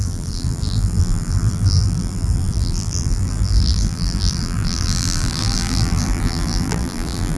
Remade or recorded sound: remade